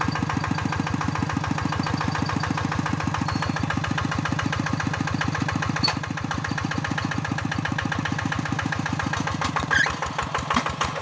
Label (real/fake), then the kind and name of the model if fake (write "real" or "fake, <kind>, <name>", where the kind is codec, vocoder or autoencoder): real